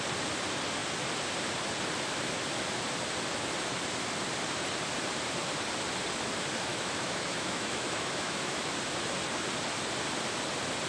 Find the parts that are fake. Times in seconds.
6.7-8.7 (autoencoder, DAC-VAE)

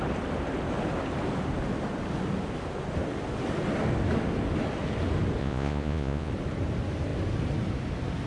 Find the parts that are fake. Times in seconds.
5.4-6.3 (vocoder, Vocos)

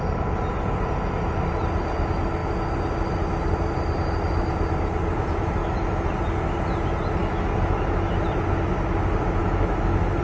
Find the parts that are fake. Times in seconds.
5.6-6.1 (autoencoder, DAC-VAE); 7.2-8.1; 9.4-10.2

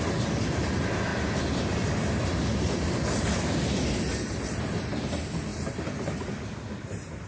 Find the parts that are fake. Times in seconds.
none

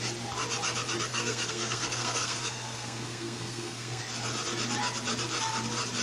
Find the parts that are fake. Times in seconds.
1.1-4.0 (codec, SNAC)

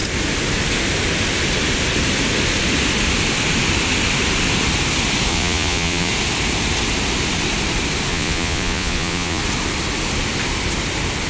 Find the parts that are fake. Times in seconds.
5.3-6.1 (vocoder, Vocos); 8.1-9.4